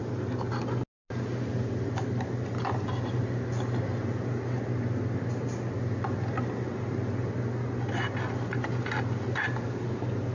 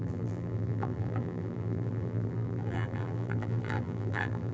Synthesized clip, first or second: second